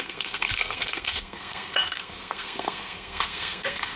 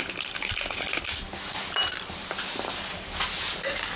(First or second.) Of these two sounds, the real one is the second